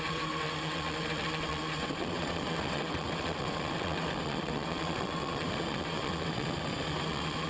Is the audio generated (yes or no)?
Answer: yes